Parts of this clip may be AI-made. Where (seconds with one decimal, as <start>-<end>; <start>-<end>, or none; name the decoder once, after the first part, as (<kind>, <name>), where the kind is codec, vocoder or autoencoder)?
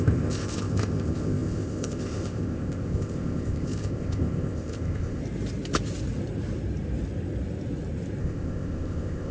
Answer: 0.0-5.2 (codec, ZipCodec); 8.2-9.3